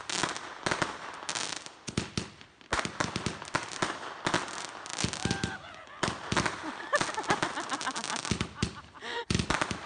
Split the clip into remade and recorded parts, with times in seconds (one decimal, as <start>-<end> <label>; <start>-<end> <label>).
0.0-9.9 recorded